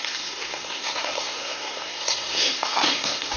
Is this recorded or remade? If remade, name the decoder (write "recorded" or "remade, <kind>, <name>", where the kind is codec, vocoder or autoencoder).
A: remade, codec, SNAC